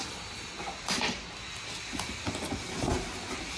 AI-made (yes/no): no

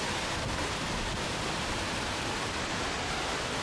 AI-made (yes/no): no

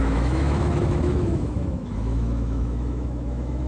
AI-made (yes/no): yes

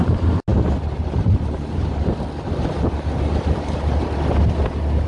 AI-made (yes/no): no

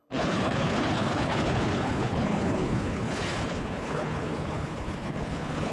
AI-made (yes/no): yes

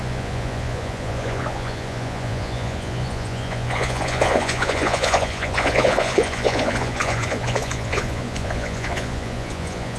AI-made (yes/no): yes